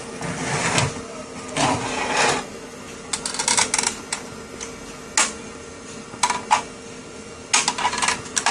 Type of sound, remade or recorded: recorded